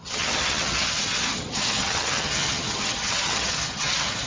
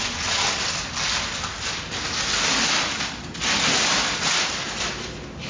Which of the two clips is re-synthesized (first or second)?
first